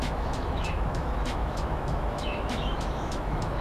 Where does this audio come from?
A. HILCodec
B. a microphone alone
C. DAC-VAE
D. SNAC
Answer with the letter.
C